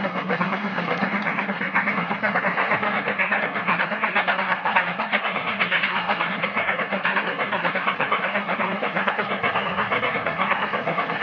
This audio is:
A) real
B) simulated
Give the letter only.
B